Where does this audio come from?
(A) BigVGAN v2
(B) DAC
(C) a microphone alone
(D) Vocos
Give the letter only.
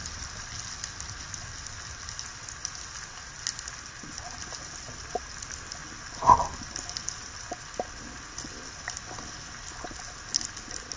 C